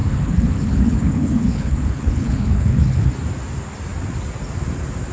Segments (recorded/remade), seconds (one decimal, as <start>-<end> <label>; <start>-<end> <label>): 0.0-3.1 remade; 3.1-5.1 recorded